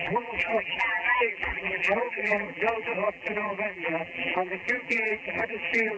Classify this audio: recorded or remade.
remade